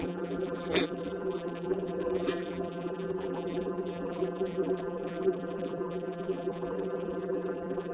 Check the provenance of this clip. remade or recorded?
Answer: remade